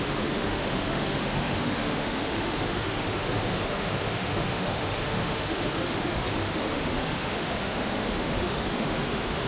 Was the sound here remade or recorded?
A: remade